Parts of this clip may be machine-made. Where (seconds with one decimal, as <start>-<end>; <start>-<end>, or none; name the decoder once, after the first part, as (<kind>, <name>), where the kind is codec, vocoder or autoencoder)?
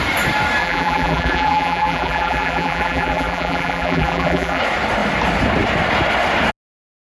0.6-4.6 (vocoder, BigVGAN v2)